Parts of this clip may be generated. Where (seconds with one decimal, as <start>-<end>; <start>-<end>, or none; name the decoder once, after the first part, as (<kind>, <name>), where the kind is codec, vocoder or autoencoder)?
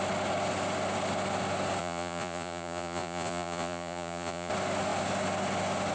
1.8-4.5 (vocoder, Vocos)